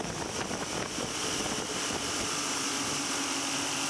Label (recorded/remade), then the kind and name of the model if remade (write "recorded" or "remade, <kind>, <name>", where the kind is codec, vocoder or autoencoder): recorded